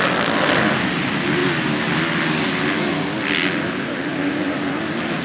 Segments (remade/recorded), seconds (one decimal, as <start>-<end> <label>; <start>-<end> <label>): 0.0-5.2 recorded